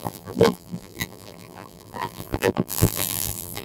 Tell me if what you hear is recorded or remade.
remade